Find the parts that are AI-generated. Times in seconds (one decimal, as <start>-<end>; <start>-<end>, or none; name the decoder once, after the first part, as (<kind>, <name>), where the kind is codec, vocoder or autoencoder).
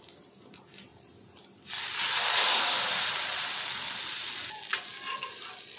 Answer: 0.9-4.3 (vocoder, BigVGAN v2); 4.9-5.8